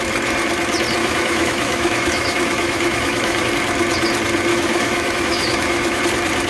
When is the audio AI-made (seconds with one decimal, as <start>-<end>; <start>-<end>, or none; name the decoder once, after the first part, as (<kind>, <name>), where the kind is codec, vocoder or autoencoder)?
1.0-3.5 (autoencoder, DAC-VAE); 4.5-6.0